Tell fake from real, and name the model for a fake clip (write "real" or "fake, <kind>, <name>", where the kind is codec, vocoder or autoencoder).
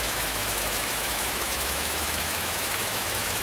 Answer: fake, autoencoder, DAC-VAE